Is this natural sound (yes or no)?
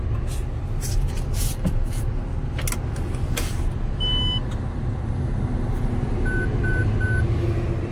yes